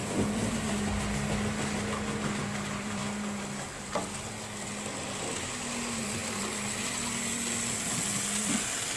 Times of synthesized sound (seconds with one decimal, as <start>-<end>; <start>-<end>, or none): none